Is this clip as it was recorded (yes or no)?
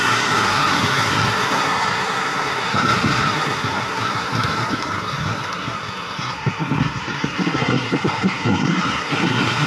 no